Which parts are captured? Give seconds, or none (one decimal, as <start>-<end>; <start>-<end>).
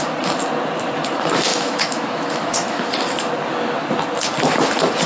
0.0-1.5; 2.9-5.1